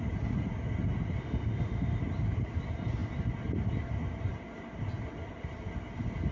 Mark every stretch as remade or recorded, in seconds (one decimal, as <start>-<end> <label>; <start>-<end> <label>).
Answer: 0.0-1.2 recorded; 1.2-2.0 remade; 2.0-6.3 recorded